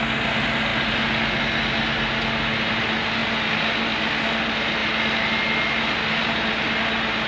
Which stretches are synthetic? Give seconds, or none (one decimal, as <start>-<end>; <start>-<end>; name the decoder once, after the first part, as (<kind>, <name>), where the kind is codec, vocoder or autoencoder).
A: none